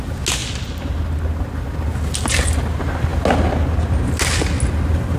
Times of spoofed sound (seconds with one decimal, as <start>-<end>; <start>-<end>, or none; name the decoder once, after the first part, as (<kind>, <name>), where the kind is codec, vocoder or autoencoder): none